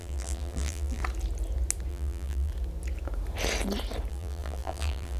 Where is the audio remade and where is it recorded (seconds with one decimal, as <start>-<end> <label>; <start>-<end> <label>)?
0.0-1.0 remade; 1.0-1.9 recorded; 1.9-2.5 remade; 2.5-4.1 recorded; 4.1-5.2 remade